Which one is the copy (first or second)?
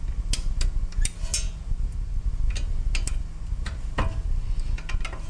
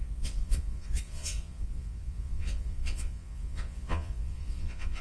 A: second